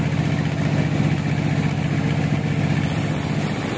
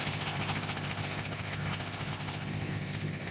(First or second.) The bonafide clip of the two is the first